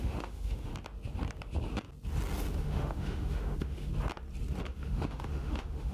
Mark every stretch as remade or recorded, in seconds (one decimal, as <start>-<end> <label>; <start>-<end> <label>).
0.0-0.7 remade; 0.7-2.5 recorded; 2.5-3.9 remade; 3.9-4.6 recorded; 4.6-5.9 remade